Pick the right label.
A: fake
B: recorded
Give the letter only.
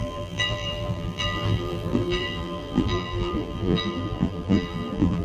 A